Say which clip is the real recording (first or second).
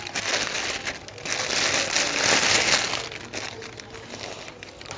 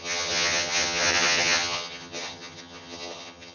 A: first